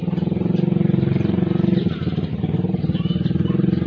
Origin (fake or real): fake